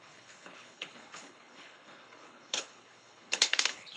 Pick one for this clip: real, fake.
fake